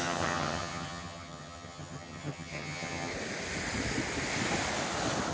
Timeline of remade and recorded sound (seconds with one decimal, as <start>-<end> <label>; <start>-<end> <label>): 0.0-3.1 remade; 3.1-5.3 recorded